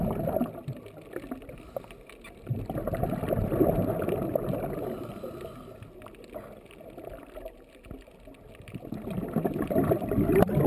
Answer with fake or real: real